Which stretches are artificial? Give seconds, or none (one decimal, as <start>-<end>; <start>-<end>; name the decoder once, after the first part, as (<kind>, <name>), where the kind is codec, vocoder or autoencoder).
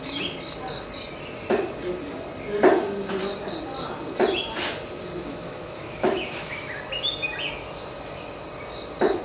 5.2-6.8 (autoencoder, DAC-VAE)